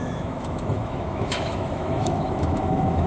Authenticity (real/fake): fake